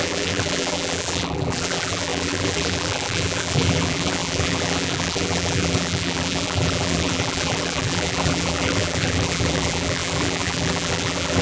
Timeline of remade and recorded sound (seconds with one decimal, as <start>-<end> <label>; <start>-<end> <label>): 0.0-11.4 remade